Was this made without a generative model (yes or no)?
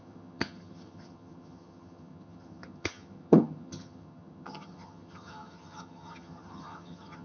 no